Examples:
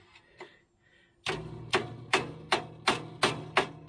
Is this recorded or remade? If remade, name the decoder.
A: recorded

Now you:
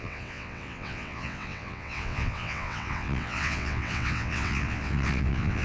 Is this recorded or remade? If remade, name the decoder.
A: remade, vocoder, WaveNeXt